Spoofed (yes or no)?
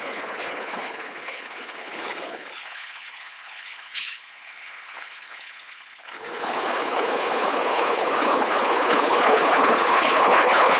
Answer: yes